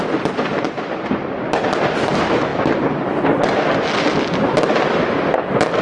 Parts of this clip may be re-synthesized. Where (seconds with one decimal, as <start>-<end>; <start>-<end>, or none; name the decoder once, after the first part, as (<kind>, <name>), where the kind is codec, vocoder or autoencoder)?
none